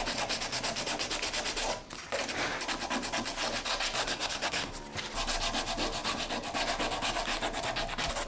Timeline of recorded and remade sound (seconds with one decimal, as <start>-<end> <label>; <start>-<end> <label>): 0.0-4.0 recorded; 4.0-4.7 remade; 4.7-8.3 recorded